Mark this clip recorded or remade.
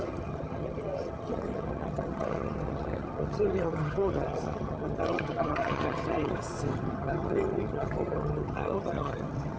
remade